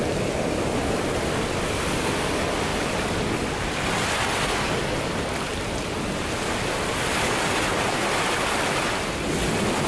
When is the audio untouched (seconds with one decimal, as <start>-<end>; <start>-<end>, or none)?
0.0-9.9